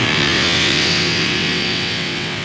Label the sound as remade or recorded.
remade